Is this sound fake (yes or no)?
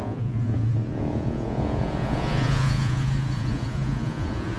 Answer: yes